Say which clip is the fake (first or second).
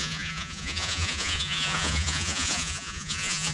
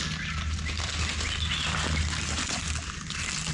first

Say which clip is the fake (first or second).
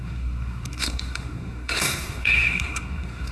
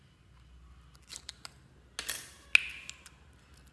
first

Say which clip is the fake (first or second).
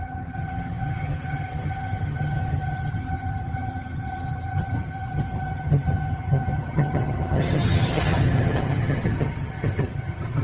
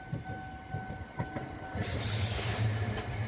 first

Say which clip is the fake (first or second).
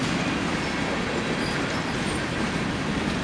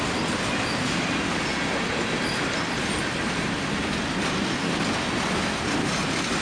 second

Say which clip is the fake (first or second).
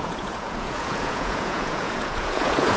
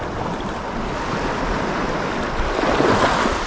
first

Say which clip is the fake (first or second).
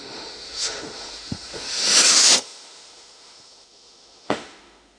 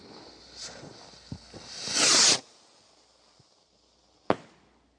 first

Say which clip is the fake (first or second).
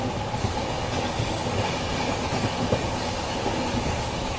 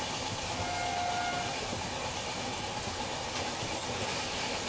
first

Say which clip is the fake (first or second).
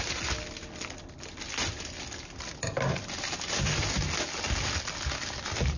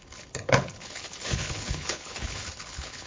second